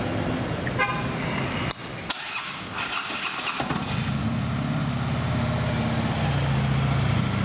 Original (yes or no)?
yes